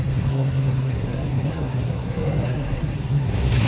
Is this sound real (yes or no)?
no